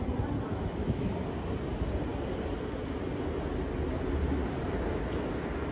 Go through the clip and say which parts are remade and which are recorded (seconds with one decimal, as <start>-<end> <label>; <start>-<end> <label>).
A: 0.0-0.5 recorded; 0.5-1.1 remade; 1.1-5.7 recorded